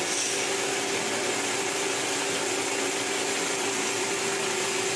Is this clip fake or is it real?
real